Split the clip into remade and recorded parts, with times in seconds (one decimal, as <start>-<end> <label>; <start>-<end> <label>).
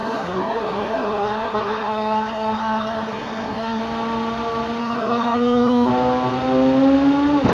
0.0-3.8 remade; 3.8-4.8 recorded; 4.8-5.9 remade; 5.9-7.5 recorded